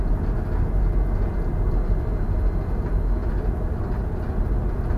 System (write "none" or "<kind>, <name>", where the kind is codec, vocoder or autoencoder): none